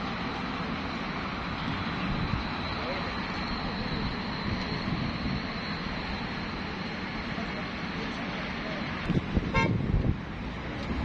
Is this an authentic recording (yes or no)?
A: yes